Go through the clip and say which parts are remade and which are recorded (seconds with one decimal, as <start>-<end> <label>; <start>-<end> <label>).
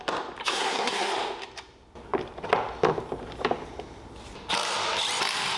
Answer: 0.0-0.4 recorded; 0.4-1.1 remade; 1.1-5.6 recorded